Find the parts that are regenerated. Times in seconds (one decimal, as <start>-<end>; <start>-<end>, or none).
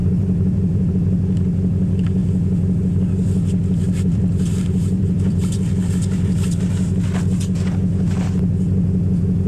0.0-0.9; 4.1-6.6